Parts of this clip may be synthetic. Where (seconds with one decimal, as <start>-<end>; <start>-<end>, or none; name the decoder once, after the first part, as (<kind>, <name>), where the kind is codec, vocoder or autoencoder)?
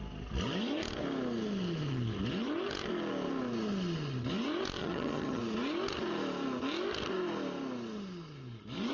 4.8-5.4 (vocoder, HiFi-GAN)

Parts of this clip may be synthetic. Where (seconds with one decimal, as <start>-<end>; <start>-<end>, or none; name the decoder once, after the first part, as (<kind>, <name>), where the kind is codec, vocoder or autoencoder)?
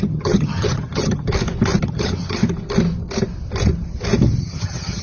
0.0-1.3 (vocoder, HiFi-GAN); 1.8-2.4; 4.4-5.0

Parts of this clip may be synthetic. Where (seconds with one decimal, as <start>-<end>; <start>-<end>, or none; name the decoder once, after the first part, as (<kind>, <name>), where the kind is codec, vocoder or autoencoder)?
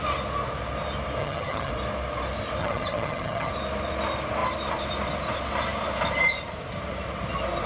1.2-1.7 (vocoder, HiFi-GAN); 2.6-3.5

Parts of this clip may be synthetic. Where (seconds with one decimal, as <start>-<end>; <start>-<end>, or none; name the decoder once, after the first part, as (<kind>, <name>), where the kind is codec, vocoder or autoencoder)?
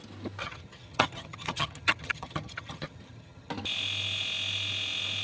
0.4-3.5 (vocoder, HiFi-GAN)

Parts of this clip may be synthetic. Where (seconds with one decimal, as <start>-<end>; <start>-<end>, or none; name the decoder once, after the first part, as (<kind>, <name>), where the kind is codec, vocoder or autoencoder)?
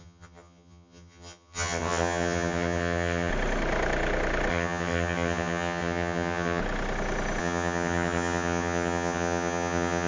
0.0-3.3 (vocoder, HiFi-GAN); 4.5-6.6; 7.4-10.1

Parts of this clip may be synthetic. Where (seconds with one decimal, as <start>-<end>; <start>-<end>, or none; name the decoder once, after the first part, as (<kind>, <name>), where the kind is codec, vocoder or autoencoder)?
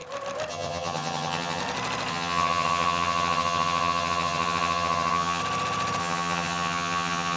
0.5-1.6 (vocoder, HiFi-GAN); 2.1-5.4; 6.0-7.4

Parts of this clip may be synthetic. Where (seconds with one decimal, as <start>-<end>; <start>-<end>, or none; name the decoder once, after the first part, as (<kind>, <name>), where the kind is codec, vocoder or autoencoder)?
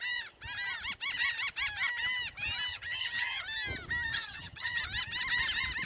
2.7-3.4 (vocoder, HiFi-GAN); 4.1-4.8